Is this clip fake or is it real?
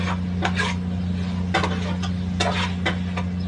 real